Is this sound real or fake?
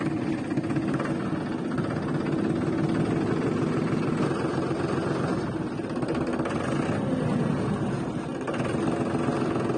real